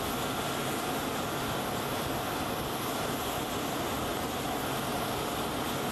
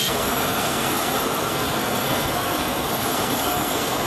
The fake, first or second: second